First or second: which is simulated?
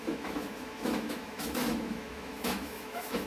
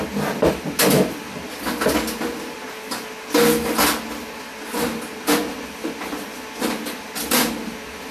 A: first